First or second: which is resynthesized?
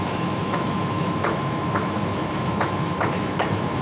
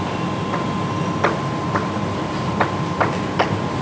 first